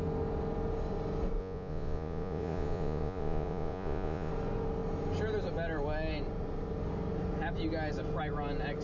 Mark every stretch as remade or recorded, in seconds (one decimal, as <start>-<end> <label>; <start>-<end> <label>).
0.0-1.4 recorded; 1.4-4.3 remade; 4.3-8.8 recorded